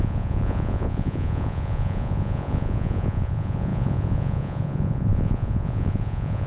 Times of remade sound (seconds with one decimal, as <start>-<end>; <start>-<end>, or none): 0.0-6.5